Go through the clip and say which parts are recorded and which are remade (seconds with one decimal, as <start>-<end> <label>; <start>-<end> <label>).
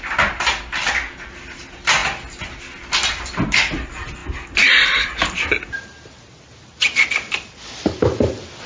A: 0.0-8.7 recorded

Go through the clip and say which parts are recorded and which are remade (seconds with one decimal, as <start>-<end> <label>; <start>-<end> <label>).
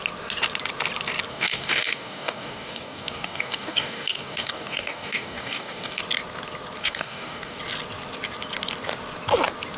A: 0.0-1.3 recorded; 1.3-6.0 remade; 6.0-6.8 recorded; 6.8-7.6 remade; 7.6-9.8 recorded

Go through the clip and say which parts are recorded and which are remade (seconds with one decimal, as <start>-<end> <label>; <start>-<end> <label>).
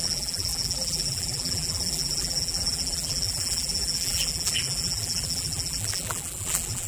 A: 0.0-6.9 remade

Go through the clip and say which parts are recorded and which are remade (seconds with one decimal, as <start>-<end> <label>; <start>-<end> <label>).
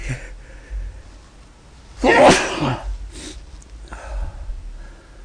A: 0.0-5.2 recorded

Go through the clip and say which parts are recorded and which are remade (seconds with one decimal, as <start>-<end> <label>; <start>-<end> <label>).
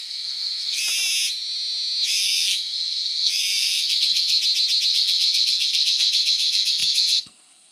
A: 0.0-0.8 remade; 0.8-2.1 recorded; 2.1-4.4 remade; 4.4-4.9 recorded; 4.9-7.7 remade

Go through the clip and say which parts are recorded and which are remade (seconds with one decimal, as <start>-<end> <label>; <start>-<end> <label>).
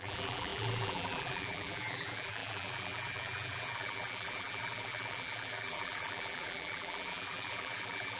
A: 0.0-8.2 remade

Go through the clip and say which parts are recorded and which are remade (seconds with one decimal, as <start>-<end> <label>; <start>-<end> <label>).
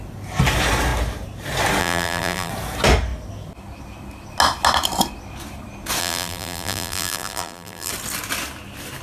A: 0.0-1.8 recorded; 1.8-2.5 remade; 2.5-6.0 recorded; 6.0-7.9 remade; 7.9-9.0 recorded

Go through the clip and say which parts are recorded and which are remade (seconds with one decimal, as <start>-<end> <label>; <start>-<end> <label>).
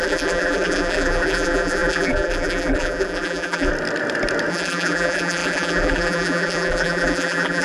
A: 0.0-3.7 remade; 3.7-4.5 recorded; 4.5-7.6 remade